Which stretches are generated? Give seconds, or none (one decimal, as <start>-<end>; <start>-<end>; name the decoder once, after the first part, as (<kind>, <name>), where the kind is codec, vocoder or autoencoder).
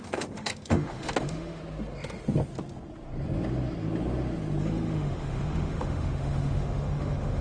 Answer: 0.0-1.6 (autoencoder, DAC-VAE); 4.6-7.4